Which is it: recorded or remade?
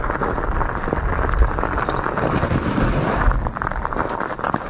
recorded